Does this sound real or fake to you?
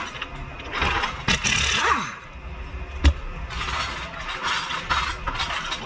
real